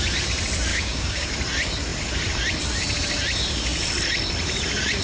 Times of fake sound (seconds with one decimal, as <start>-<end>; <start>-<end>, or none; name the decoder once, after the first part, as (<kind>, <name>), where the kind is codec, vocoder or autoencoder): 0.7-1.3 (codec, DAC)